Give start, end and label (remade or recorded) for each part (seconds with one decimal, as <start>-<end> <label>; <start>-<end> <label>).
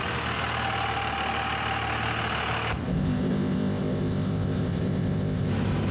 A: 0.0-2.8 recorded; 2.8-5.5 remade; 5.5-5.9 recorded